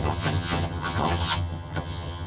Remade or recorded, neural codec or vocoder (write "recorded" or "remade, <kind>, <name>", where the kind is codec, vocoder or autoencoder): remade, vocoder, HiFi-GAN